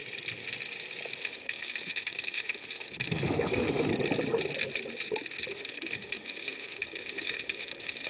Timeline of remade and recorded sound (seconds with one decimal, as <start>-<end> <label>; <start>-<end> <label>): 0.0-1.2 recorded; 1.2-3.9 remade; 3.9-5.5 recorded; 5.5-8.1 remade